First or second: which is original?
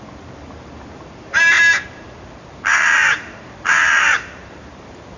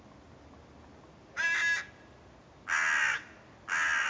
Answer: second